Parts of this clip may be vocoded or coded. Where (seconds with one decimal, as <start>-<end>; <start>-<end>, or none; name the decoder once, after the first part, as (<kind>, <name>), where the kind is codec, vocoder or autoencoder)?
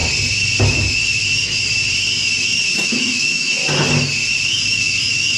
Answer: 2.7-3.6 (autoencoder, DAC-VAE); 4.5-5.4